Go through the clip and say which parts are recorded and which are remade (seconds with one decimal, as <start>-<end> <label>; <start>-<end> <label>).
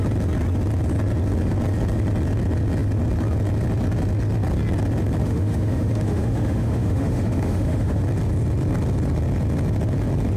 0.0-5.2 recorded; 5.2-8.0 remade; 8.0-10.4 recorded